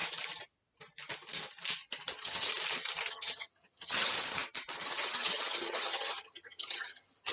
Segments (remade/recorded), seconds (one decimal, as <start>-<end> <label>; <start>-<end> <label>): 0.0-2.1 recorded; 2.1-2.5 remade; 2.5-3.1 recorded; 3.1-4.1 remade; 4.1-4.8 recorded; 4.8-7.3 remade

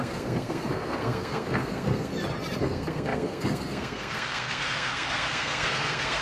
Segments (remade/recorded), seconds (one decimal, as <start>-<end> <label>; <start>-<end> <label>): 0.0-2.1 remade; 2.1-2.6 recorded; 2.6-6.2 remade